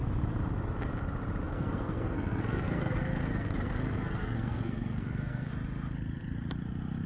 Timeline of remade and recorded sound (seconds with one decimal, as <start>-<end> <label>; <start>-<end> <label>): 0.0-1.5 recorded; 1.5-5.5 remade; 5.5-7.1 recorded